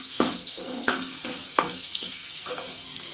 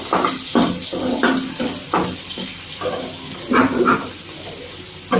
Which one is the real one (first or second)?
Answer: second